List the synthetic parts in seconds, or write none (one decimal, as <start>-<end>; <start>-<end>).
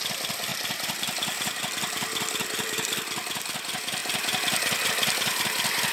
0.5-1.6